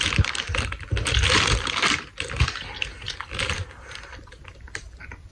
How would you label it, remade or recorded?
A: recorded